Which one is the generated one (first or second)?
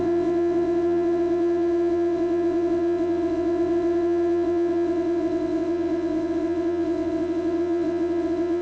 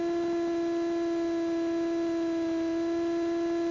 first